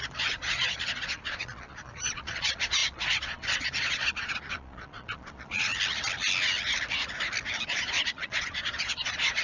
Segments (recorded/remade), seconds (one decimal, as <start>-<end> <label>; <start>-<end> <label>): 0.0-5.7 remade; 5.7-7.7 recorded; 7.7-9.4 remade